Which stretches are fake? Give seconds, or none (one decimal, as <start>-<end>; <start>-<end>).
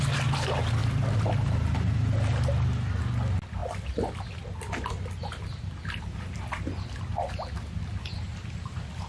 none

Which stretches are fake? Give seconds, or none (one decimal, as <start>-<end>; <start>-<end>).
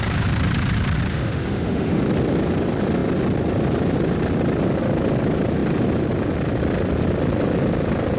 1.1-2.0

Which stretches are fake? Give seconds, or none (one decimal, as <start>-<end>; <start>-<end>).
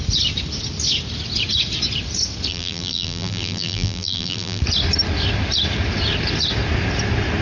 2.5-4.6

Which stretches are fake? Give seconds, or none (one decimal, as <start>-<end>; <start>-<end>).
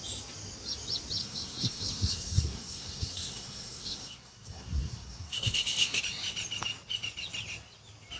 1.2-6.0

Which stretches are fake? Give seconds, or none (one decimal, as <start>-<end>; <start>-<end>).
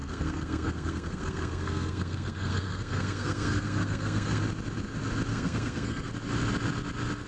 0.0-4.4; 5.3-6.1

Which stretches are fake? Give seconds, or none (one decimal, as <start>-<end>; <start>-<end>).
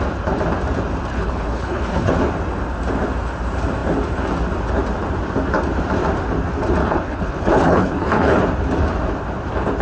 1.1-2.1; 6.8-8.4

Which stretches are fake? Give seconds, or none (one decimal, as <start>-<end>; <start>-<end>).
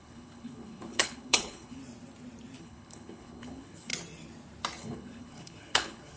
0.0-1.8; 2.6-3.9; 4.8-6.2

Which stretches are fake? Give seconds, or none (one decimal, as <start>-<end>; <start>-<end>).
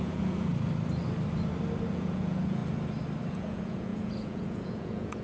0.0-0.5; 1.9-2.6; 3.3-5.2